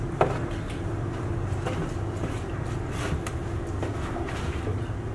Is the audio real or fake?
real